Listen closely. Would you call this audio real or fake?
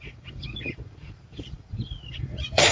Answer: fake